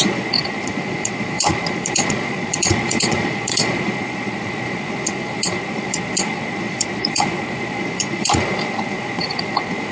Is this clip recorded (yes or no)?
no